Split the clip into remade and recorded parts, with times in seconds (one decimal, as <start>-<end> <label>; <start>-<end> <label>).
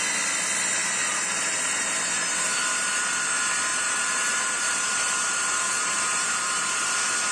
0.0-0.8 recorded; 0.8-1.9 remade; 1.9-3.7 recorded; 3.7-6.5 remade; 6.5-7.3 recorded